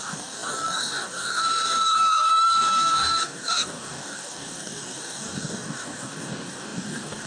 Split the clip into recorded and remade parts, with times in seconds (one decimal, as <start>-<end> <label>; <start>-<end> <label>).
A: 0.0-7.3 remade